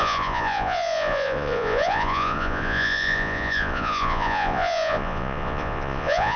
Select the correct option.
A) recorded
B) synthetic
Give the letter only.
B